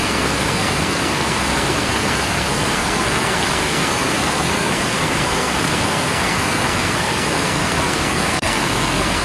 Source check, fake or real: fake